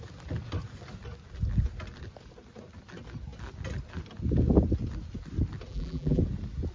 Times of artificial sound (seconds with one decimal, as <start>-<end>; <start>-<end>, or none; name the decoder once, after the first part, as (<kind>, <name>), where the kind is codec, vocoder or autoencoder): 5.7-6.2 (vocoder, BigVGAN v2)